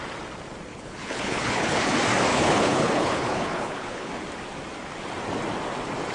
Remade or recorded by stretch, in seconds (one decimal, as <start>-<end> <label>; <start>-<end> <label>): 0.0-0.7 recorded; 0.7-1.9 remade; 1.9-2.3 recorded; 2.3-4.1 remade; 4.1-6.1 recorded